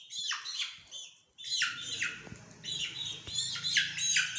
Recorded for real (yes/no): yes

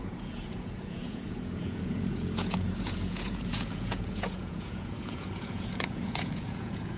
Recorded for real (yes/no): no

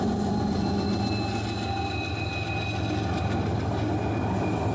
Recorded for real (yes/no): yes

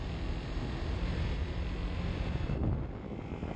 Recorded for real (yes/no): yes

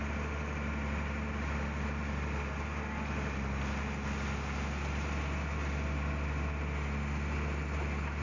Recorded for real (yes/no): yes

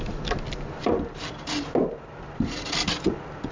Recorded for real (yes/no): yes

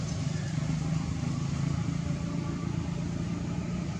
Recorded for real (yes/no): yes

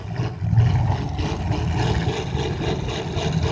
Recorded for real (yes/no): yes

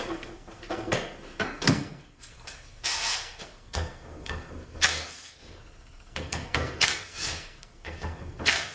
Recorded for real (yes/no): no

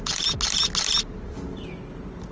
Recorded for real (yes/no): yes